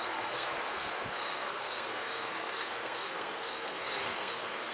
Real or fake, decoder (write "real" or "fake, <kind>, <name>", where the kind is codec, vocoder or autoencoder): fake, codec, SNAC